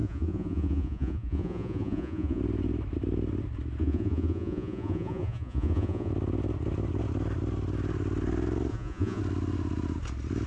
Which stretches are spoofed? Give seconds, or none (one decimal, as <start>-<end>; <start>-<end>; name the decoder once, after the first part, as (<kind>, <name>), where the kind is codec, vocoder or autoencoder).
0.0-2.4 (vocoder, Vocos); 3.8-6.1; 8.7-9.2